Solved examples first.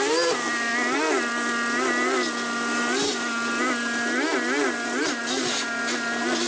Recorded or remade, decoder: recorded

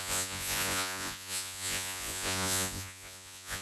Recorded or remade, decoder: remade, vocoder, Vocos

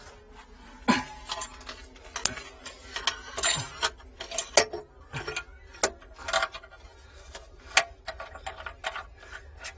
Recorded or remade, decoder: recorded